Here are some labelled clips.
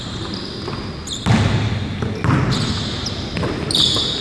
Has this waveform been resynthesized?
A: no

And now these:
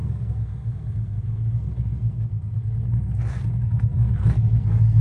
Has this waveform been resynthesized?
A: yes